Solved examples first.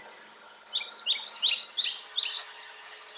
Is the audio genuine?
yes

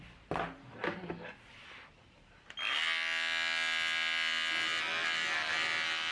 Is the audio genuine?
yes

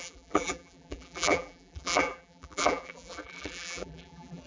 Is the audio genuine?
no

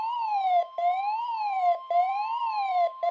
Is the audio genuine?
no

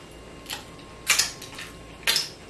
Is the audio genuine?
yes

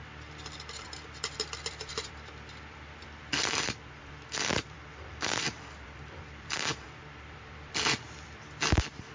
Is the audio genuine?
no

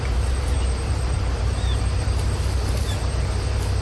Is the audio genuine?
no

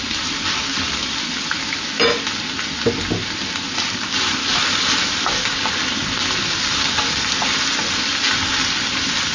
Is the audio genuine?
yes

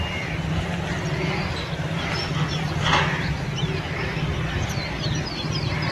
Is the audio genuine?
no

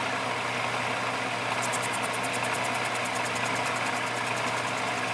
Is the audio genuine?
yes